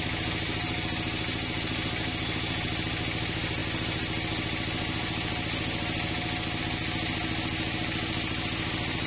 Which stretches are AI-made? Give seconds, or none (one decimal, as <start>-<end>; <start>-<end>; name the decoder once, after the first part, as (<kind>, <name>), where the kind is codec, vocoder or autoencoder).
none